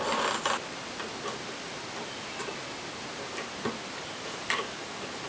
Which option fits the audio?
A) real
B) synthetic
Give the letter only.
A